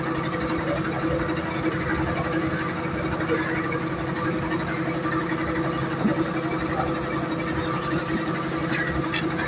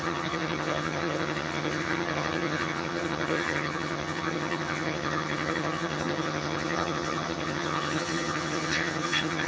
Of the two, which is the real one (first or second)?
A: first